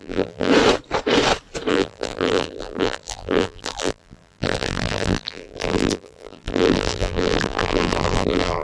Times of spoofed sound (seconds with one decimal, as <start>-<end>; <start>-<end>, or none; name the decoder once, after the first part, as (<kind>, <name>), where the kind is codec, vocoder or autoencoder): 0.0-0.5 (vocoder, BigVGAN v2); 1.7-8.6